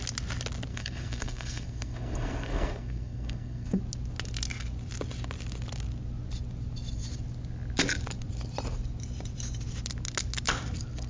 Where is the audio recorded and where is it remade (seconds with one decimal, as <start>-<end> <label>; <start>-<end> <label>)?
0.0-0.7 recorded; 0.7-3.8 remade; 3.8-11.1 recorded